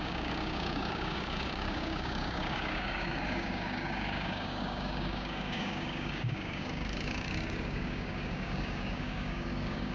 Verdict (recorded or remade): remade